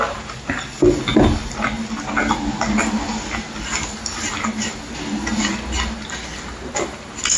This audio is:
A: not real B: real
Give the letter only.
B